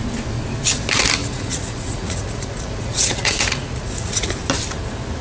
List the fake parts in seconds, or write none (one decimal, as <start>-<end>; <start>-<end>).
1.2-4.3